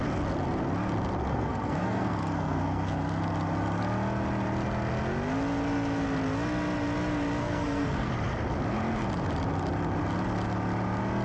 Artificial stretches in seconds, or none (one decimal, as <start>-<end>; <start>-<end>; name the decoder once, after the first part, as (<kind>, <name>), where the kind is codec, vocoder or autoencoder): 1.3-3.2 (codec, SNAC); 7.4-8.1